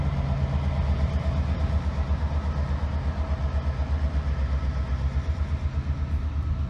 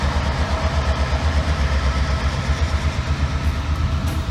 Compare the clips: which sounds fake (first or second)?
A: second